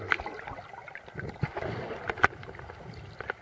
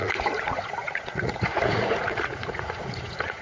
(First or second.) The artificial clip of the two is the second